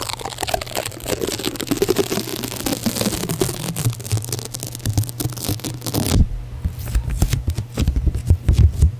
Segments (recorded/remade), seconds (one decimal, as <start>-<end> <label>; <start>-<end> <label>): 0.0-9.0 recorded